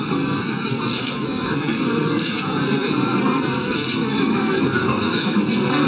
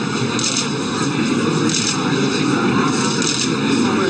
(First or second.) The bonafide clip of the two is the second